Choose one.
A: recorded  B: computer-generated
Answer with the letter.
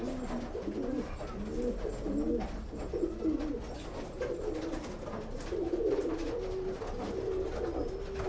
A